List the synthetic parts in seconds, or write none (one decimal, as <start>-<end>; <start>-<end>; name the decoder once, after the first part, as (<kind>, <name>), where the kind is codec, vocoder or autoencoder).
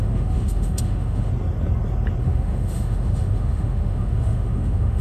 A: 0.0-1.3 (autoencoder, DAC-VAE); 2.2-5.0